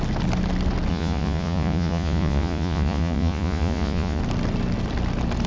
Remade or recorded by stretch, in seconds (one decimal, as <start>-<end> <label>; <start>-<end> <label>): 0.0-0.9 recorded; 0.9-4.2 remade; 4.2-5.5 recorded